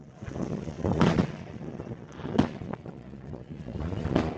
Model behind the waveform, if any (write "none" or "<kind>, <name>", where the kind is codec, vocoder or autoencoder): vocoder, Vocos